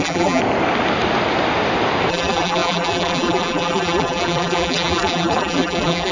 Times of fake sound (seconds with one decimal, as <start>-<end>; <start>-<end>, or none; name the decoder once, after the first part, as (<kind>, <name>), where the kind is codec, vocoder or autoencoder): 0.0-0.4 (vocoder, BigVGAN v2); 2.1-6.1